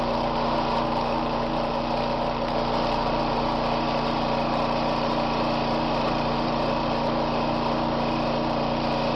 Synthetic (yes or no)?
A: no